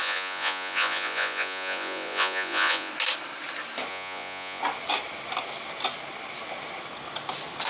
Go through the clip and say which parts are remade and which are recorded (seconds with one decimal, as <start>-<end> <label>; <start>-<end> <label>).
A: 0.0-2.9 remade; 2.9-3.9 recorded; 3.9-4.6 remade; 4.6-7.7 recorded